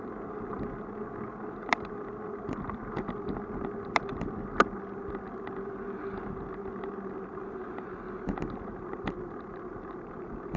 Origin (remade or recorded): recorded